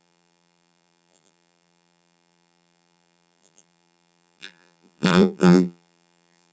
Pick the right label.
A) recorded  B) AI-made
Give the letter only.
B